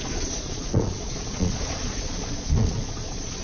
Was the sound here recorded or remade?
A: remade